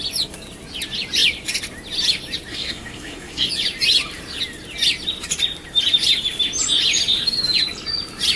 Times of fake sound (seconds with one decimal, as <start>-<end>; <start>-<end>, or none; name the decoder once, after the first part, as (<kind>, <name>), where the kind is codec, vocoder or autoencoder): 2.5-3.5 (codec, SNAC)